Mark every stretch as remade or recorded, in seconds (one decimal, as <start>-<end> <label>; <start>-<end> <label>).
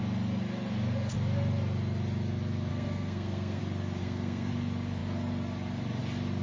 0.0-2.7 recorded; 2.7-3.6 remade; 3.6-4.0 recorded; 4.0-4.5 remade; 4.5-6.4 recorded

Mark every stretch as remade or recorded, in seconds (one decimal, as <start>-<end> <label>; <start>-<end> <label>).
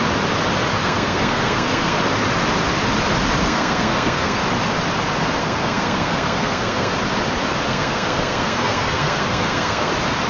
0.0-0.8 recorded; 0.8-2.0 remade; 2.0-3.4 recorded; 3.4-4.4 remade; 4.4-5.4 recorded; 5.4-6.9 remade; 6.9-7.7 recorded; 7.7-9.9 remade; 9.9-10.3 recorded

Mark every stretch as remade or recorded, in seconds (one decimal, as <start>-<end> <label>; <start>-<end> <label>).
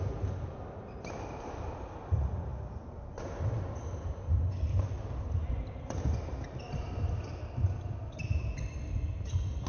0.0-9.7 recorded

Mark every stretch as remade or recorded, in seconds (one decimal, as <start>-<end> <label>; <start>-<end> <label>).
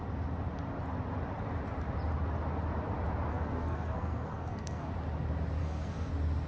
0.0-3.3 recorded; 3.3-4.9 remade; 4.9-5.6 recorded; 5.6-6.1 remade; 6.1-6.5 recorded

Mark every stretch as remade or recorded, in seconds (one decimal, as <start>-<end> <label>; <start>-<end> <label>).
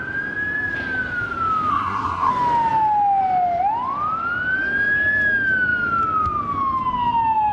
0.0-1.7 recorded; 1.7-2.3 remade; 2.3-7.5 recorded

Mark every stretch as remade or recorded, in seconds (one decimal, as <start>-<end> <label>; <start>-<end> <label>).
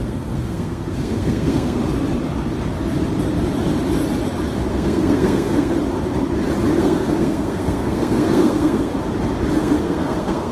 0.0-1.8 remade; 1.8-4.7 recorded; 4.7-5.7 remade; 5.7-6.8 recorded; 6.8-8.9 remade; 8.9-9.5 recorded; 9.5-10.5 remade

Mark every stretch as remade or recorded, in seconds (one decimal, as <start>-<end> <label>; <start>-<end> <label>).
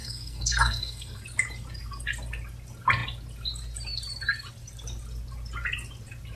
0.0-1.2 remade; 1.2-6.4 recorded